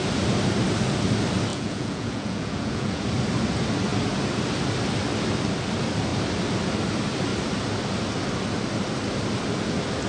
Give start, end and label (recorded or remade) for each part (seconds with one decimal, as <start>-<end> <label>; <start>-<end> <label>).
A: 0.0-1.5 recorded; 1.5-3.0 remade; 3.0-10.1 recorded